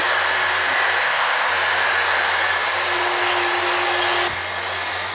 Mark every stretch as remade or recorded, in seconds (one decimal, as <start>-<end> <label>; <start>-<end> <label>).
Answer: 0.0-1.0 recorded; 1.0-1.5 remade; 1.5-5.1 recorded